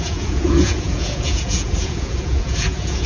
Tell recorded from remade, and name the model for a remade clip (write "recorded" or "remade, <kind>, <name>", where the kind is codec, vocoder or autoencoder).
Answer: remade, vocoder, Vocos